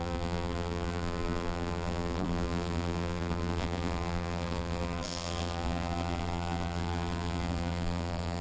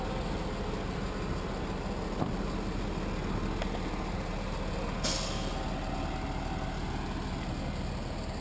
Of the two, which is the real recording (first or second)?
second